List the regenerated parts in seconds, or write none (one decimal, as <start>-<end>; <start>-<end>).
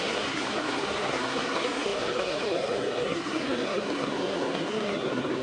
0.0-5.4